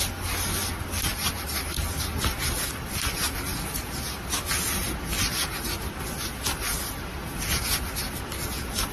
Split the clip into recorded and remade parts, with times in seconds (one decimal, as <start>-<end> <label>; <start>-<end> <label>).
0.0-1.1 recorded; 1.1-1.7 remade; 1.7-8.9 recorded